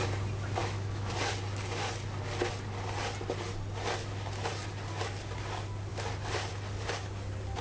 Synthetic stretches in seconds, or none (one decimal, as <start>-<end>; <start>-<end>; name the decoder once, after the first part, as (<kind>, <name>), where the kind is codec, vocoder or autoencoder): 0.6-1.1 (autoencoder, DAC-VAE)